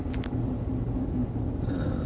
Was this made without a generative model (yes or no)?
yes